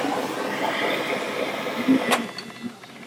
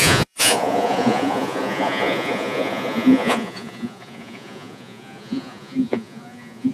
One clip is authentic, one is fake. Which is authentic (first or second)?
first